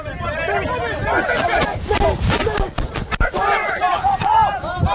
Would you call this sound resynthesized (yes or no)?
no